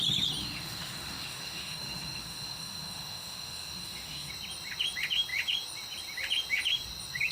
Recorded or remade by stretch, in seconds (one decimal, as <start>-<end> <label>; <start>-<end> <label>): 0.0-0.4 recorded; 0.4-4.3 remade; 4.3-7.3 recorded